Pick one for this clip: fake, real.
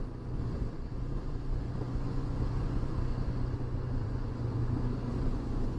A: fake